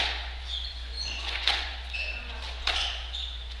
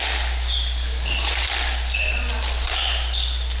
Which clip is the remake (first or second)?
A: first